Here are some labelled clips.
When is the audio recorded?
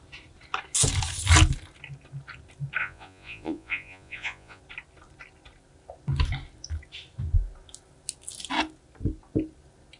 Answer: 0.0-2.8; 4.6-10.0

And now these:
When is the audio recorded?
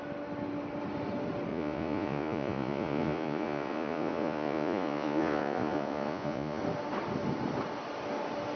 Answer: 0.0-1.5; 6.6-8.6